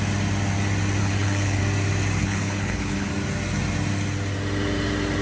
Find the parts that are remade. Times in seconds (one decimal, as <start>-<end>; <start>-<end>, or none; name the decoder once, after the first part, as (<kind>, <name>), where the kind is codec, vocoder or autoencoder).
1.0-1.6 (codec, HILCodec); 2.2-3.1